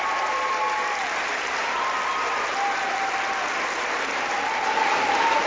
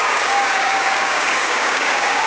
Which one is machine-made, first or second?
second